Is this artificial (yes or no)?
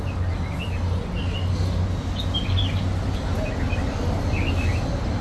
no